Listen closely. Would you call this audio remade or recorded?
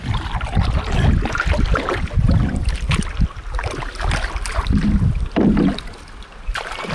recorded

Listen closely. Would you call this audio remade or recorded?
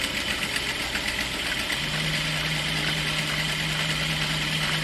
recorded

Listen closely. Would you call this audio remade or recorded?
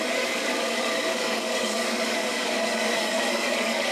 remade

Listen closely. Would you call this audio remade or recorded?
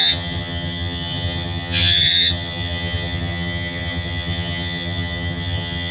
remade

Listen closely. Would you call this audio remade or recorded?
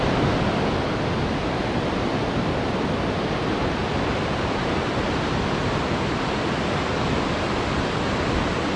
recorded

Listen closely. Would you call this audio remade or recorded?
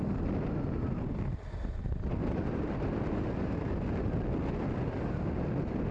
recorded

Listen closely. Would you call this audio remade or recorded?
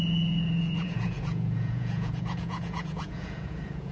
remade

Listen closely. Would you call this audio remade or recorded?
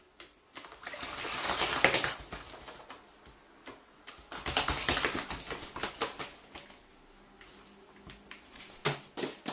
recorded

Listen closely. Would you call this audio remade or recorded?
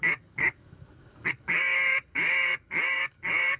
remade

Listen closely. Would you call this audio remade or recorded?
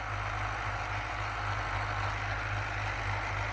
recorded